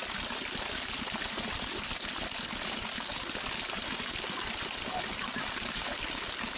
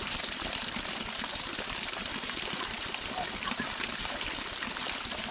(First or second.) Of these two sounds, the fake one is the second